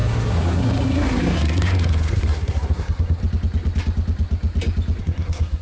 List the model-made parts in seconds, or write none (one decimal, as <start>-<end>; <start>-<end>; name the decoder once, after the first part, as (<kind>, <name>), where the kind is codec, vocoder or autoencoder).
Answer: 0.0-3.2 (codec, SNAC); 5.0-5.6